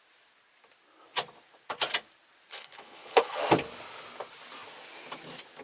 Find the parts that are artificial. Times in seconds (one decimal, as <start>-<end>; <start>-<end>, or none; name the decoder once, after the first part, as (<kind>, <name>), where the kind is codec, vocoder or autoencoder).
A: 2.5-3.4 (codec, HILCodec)